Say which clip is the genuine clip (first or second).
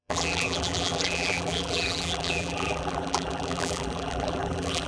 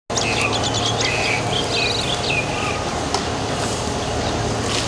second